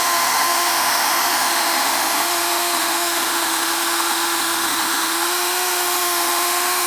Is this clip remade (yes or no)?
yes